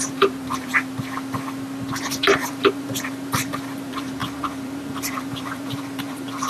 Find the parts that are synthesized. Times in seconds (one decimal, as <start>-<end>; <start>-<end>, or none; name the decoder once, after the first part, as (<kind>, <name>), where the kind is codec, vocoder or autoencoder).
0.0-0.7 (vocoder, BigVGAN v2); 2.0-6.5

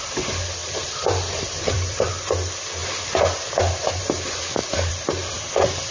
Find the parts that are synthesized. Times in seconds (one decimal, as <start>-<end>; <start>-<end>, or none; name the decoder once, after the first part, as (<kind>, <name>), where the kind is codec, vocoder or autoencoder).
0.6-2.1 (vocoder, BigVGAN v2); 2.8-4.0; 4.6-5.5

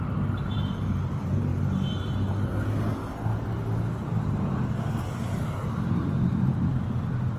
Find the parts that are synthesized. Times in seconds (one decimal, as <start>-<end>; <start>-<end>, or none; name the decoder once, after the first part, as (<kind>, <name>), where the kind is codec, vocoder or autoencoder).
0.0-1.5 (vocoder, BigVGAN v2); 5.9-7.4

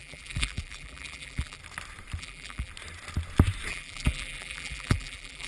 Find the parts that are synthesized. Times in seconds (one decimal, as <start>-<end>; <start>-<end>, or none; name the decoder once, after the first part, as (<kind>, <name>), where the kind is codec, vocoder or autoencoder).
0.0-1.6 (vocoder, BigVGAN v2); 2.2-2.7; 3.7-5.5

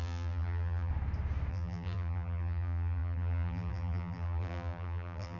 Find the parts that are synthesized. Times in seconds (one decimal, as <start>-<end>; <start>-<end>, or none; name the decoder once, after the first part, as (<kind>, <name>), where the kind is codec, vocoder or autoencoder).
0.0-0.9 (vocoder, BigVGAN v2); 1.5-5.4

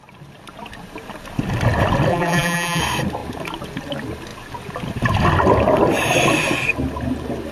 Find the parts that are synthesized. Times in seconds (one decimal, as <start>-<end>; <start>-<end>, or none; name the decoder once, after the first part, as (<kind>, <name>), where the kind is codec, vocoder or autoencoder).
2.1-2.8 (vocoder, BigVGAN v2)

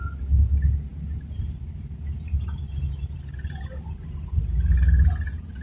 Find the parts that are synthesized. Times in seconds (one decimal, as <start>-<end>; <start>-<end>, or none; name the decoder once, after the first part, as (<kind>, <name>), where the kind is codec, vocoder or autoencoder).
none